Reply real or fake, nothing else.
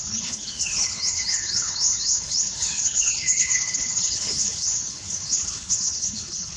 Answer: fake